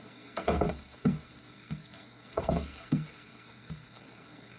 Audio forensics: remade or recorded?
remade